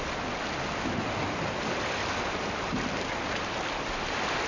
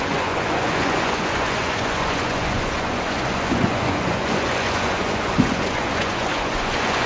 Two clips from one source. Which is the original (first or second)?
first